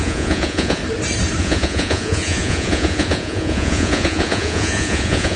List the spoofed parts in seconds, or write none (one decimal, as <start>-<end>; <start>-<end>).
0.0-0.8; 1.4-5.4